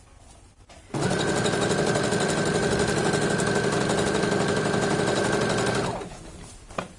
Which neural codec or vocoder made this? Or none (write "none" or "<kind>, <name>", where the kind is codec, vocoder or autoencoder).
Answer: none